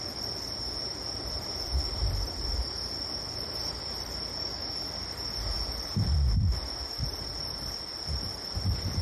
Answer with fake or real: real